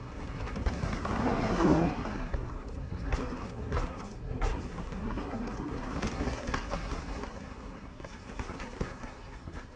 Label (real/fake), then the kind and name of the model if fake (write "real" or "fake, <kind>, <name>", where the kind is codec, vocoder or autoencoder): fake, codec, SNAC